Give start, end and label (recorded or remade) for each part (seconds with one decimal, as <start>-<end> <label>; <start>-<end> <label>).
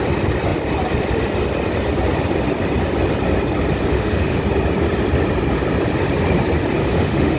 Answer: 0.0-3.9 recorded; 3.9-4.4 remade; 4.4-6.8 recorded; 6.8-7.4 remade